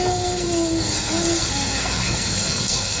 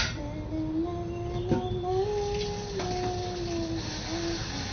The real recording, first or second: second